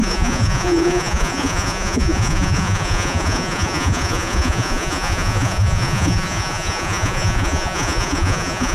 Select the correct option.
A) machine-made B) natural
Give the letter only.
A